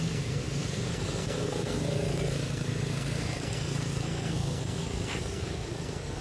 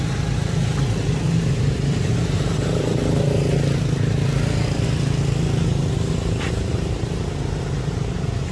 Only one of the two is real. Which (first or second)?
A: second